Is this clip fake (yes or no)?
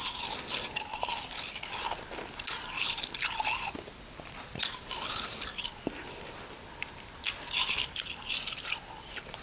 no